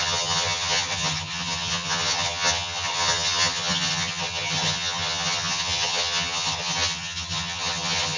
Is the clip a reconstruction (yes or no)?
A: yes